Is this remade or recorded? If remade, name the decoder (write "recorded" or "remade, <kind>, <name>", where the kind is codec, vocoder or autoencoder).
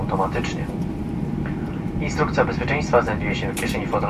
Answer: remade, vocoder, BigVGAN v2